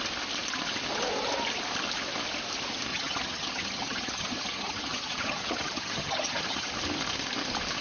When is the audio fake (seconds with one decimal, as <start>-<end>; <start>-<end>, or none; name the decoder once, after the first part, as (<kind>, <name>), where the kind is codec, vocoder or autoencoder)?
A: 2.9-6.7 (vocoder, HiFi-GAN)